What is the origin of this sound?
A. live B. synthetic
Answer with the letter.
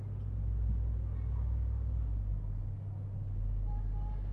A